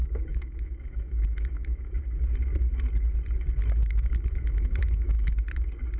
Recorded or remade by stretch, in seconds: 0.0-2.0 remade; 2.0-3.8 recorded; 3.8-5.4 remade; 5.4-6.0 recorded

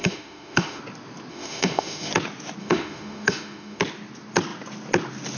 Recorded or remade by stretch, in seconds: 0.0-0.8 remade; 0.8-1.3 recorded; 1.3-2.1 remade; 2.1-2.6 recorded; 2.6-3.8 remade; 3.8-5.4 recorded

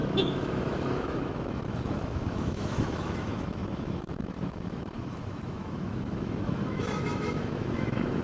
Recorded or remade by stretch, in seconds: 0.0-8.2 remade

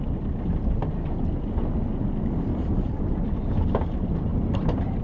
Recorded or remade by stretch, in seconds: 0.0-5.0 recorded

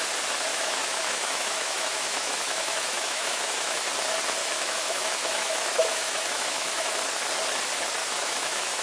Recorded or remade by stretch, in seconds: 0.0-0.5 recorded; 0.5-3.9 remade; 3.9-4.4 recorded; 4.4-7.0 remade; 7.0-8.0 recorded; 8.0-8.8 remade

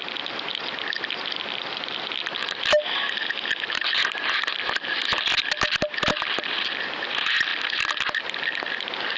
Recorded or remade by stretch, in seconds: 0.0-9.2 recorded

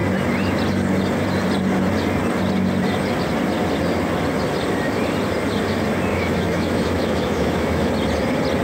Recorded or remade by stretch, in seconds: 0.0-6.1 recorded; 6.1-7.9 remade; 7.9-8.6 recorded

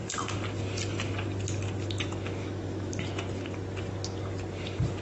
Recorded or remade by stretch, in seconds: 0.0-2.4 recorded; 2.4-2.9 remade; 2.9-5.0 recorded